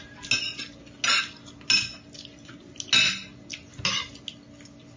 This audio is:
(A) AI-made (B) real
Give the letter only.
B